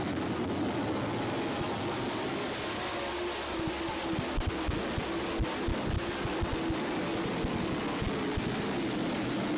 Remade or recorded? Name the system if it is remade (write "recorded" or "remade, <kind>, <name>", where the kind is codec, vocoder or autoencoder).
recorded